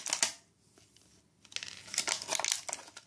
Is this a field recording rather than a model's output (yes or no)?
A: yes